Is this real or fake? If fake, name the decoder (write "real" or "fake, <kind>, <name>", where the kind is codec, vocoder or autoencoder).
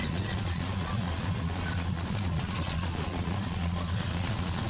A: fake, vocoder, Vocos